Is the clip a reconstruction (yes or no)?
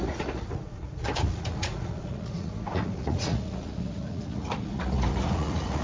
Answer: yes